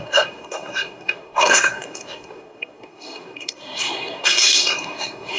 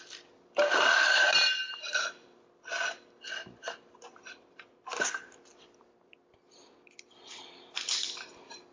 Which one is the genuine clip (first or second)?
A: second